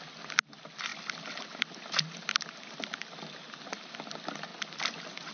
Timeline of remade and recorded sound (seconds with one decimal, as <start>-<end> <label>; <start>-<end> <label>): 0.0-5.3 recorded